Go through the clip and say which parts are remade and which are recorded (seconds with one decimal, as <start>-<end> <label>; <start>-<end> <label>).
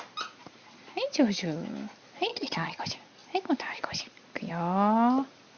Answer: 0.0-2.3 recorded; 2.3-2.8 remade; 2.8-5.6 recorded